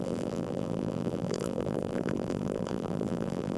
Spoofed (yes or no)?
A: yes